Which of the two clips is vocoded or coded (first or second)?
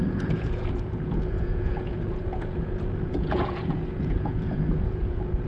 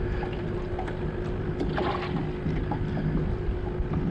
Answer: first